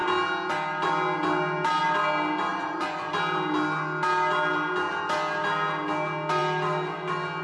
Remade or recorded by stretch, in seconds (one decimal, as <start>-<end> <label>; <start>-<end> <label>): 0.0-2.5 recorded; 2.5-3.1 remade; 3.1-7.4 recorded